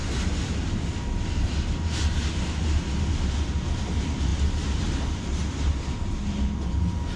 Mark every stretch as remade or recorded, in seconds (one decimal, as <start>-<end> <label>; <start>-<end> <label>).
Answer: 0.0-7.2 recorded

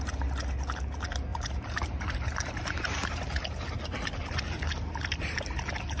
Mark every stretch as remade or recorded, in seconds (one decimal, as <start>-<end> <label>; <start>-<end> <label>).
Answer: 0.0-1.3 recorded; 1.3-3.2 remade; 3.2-6.0 recorded

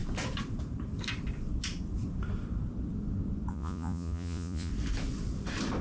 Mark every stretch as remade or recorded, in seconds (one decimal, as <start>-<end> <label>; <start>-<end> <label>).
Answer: 0.0-3.5 recorded; 3.5-4.7 remade; 4.7-5.8 recorded

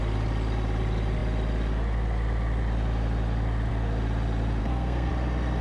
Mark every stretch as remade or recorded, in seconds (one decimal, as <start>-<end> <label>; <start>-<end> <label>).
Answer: 0.0-4.6 recorded; 4.6-5.1 remade; 5.1-5.6 recorded